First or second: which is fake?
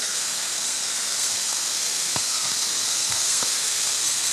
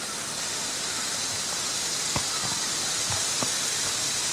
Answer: first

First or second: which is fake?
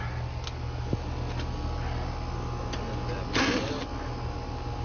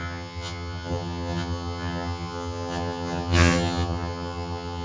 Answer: second